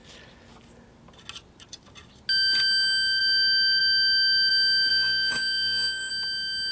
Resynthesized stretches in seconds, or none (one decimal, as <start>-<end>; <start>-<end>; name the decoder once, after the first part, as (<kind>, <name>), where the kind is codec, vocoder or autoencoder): 4.9-6.1 (autoencoder, DAC-VAE)